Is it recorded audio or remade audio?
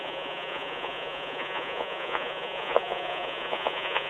remade